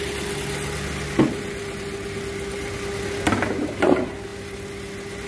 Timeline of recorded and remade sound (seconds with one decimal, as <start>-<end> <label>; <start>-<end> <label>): 0.0-5.3 recorded